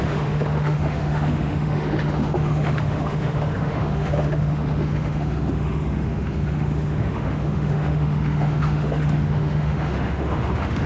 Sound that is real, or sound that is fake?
fake